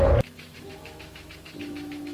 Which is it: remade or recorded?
remade